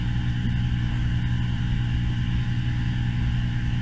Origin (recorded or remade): recorded